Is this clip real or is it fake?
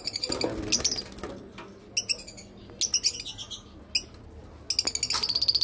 real